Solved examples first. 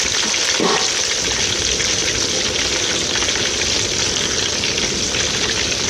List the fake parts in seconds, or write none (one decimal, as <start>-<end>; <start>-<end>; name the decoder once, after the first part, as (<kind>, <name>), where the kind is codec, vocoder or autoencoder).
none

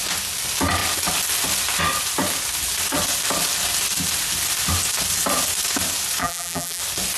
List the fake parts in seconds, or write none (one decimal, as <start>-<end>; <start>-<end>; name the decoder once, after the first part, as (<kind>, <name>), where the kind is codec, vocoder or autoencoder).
6.2-6.8 (vocoder, BigVGAN v2)

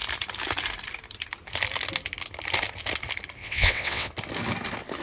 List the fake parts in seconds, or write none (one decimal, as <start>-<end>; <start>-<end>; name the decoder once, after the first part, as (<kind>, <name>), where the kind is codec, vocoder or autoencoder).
3.4-4.1 (vocoder, WaveNeXt)

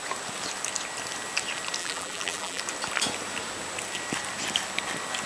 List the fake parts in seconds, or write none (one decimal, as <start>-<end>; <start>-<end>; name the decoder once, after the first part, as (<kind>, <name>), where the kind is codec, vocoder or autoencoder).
1.8-2.6 (vocoder, BigVGAN v2)